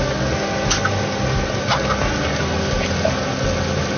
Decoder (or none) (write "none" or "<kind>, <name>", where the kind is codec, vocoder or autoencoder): none